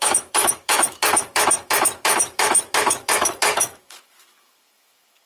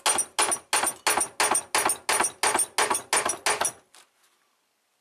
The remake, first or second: first